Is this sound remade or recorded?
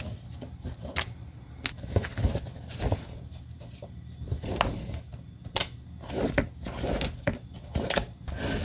recorded